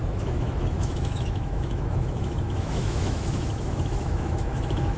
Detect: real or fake fake